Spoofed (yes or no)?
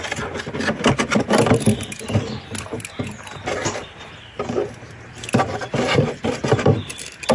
no